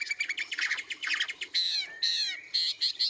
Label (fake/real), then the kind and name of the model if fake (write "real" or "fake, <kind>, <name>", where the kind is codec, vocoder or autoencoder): real